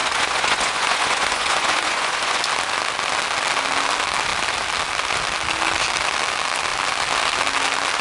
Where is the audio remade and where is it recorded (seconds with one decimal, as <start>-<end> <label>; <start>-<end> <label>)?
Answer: 0.0-2.4 remade; 2.4-8.0 recorded